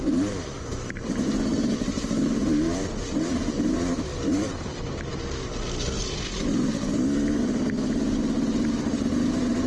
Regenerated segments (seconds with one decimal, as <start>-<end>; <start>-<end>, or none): 0.0-4.1; 8.8-9.7